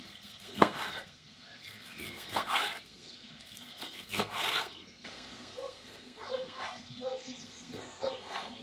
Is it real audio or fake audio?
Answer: fake